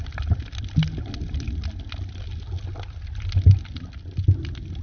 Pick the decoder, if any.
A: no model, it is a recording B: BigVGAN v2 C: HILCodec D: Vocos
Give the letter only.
A